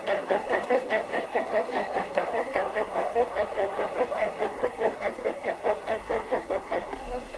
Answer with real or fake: fake